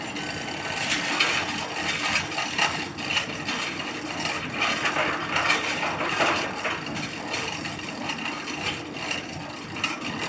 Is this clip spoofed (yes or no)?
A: no